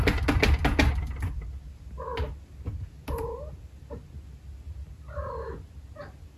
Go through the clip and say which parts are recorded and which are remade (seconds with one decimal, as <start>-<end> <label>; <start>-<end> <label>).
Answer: 0.0-6.4 recorded